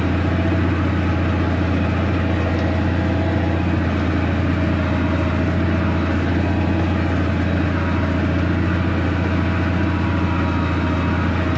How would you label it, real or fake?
real